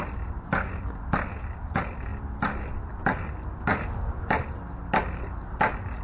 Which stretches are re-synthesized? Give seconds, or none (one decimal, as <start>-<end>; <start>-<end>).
none